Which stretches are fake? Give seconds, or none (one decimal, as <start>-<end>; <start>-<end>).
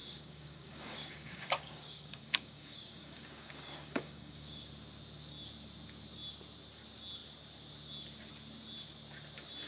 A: 0.0-4.7